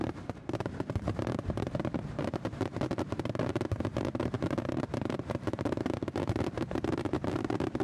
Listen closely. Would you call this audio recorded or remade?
remade